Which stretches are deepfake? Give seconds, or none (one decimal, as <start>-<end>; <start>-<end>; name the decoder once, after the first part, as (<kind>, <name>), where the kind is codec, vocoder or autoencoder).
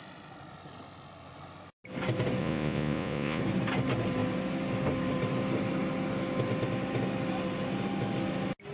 2.4-3.4 (vocoder, Vocos)